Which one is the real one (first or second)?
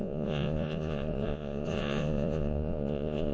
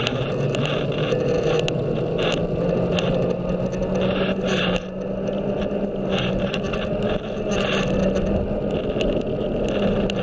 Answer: second